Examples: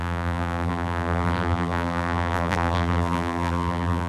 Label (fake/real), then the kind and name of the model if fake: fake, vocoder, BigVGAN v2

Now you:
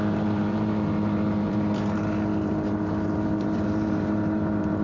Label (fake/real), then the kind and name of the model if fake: fake, vocoder, BigVGAN v2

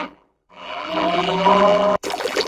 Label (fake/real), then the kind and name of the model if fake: fake, vocoder, BigVGAN v2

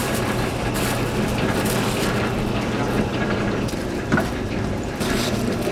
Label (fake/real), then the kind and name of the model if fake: fake, vocoder, BigVGAN v2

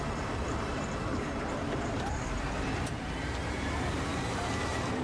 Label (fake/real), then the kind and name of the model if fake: fake, vocoder, BigVGAN v2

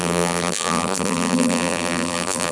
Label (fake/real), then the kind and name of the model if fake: fake, vocoder, BigVGAN v2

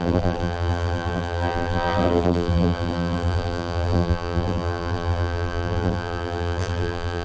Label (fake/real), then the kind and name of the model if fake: fake, vocoder, BigVGAN v2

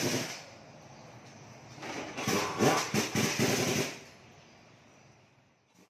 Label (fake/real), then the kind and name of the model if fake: real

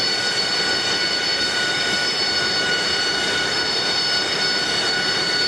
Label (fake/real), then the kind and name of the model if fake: real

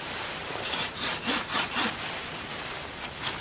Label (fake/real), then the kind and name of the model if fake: fake, vocoder, BigVGAN v2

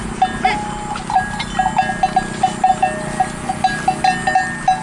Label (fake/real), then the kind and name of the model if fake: real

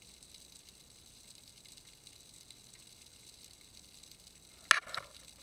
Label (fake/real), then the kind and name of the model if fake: real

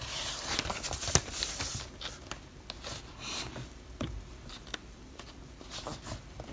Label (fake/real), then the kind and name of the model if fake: real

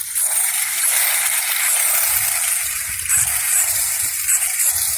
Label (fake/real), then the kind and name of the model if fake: real